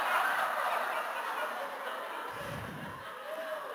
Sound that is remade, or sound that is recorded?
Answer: recorded